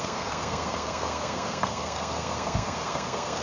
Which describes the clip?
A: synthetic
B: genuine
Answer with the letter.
A